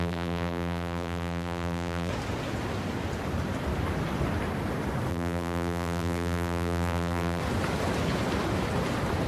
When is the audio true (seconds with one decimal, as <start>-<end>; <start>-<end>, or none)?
2.1-5.1; 7.4-9.3